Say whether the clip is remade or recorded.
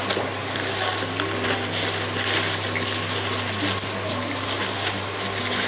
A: recorded